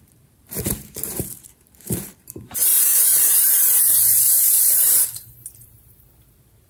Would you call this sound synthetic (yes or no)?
yes